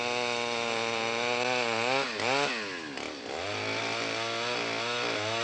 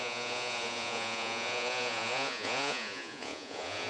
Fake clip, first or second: second